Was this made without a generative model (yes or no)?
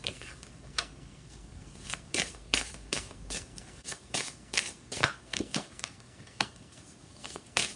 no